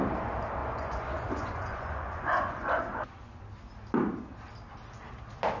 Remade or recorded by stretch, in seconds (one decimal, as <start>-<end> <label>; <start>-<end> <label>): 0.0-0.6 recorded; 0.6-3.4 remade; 3.4-5.6 recorded

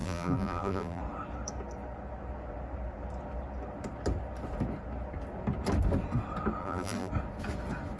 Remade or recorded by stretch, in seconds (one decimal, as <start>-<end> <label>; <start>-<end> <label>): 0.0-1.0 remade; 1.0-6.6 recorded; 6.6-7.1 remade; 7.1-8.0 recorded

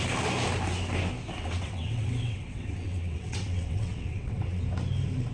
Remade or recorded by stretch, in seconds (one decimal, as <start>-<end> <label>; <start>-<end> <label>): 0.0-1.4 recorded; 1.4-4.6 remade; 4.6-5.3 recorded